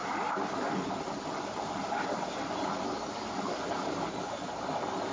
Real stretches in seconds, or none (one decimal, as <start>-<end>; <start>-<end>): 0.0-5.1